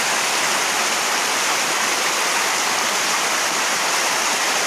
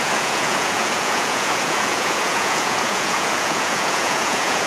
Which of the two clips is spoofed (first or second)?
second